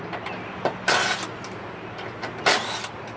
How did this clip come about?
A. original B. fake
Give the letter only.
A